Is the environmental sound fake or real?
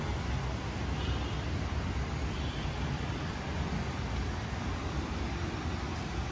real